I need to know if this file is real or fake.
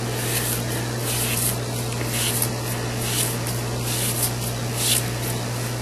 real